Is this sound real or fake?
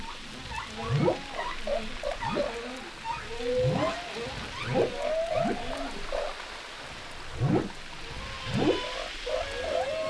real